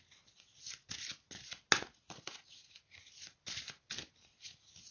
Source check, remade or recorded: recorded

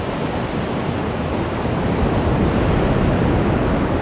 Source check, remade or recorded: recorded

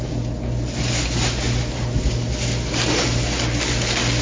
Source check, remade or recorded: recorded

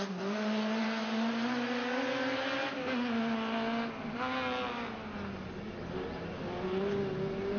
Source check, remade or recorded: recorded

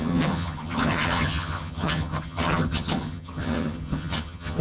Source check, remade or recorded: remade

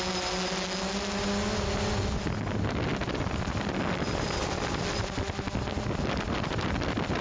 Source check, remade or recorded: recorded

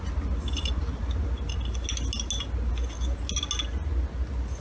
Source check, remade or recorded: recorded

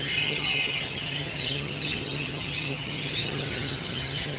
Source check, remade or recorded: remade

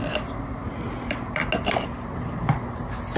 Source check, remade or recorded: recorded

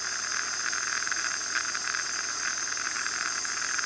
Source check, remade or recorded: recorded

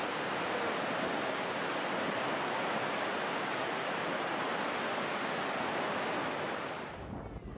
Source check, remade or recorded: recorded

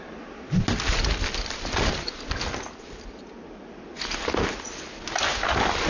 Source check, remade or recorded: recorded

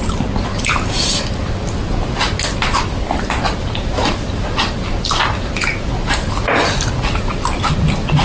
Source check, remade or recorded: recorded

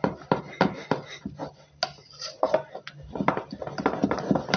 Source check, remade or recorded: recorded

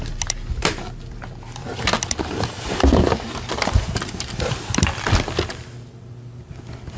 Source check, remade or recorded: recorded